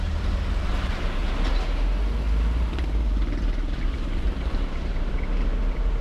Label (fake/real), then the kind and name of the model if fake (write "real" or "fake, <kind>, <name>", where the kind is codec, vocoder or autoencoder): fake, vocoder, BigVGAN v2